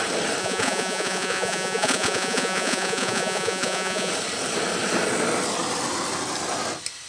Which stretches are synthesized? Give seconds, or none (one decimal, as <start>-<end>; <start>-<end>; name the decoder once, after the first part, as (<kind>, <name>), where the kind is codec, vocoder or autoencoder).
0.4-4.1 (vocoder, Vocos)